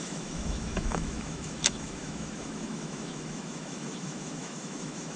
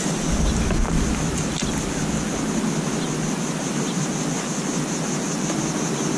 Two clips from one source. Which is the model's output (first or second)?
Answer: first